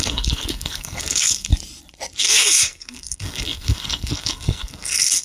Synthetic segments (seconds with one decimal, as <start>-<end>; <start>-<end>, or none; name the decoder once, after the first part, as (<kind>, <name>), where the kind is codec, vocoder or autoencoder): 0.0-1.5 (codec, SNAC); 2.2-5.2